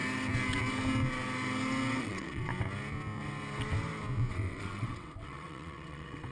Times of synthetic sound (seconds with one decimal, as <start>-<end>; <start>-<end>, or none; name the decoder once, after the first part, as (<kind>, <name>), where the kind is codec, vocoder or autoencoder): 2.0-2.5 (vocoder, WaveNeXt); 4.3-6.3